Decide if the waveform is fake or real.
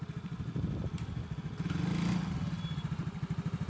real